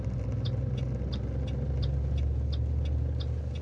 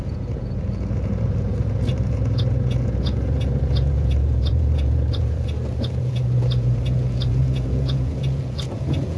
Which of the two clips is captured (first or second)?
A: first